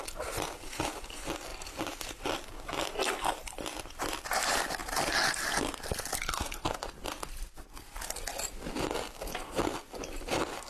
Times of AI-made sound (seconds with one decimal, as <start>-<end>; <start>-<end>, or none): none